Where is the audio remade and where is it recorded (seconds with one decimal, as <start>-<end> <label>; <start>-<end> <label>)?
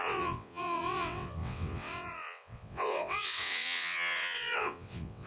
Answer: 0.0-5.3 remade